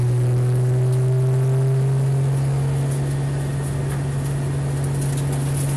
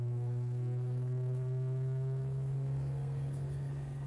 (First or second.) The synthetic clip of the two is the second